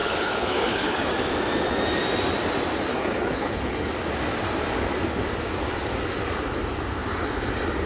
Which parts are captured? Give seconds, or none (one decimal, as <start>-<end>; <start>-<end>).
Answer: 1.1-2.9; 3.9-7.9